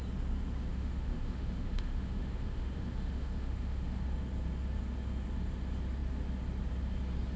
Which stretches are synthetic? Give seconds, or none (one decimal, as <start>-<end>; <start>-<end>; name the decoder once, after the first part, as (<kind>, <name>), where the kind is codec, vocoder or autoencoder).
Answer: 0.7-4.0 (autoencoder, DAC-VAE)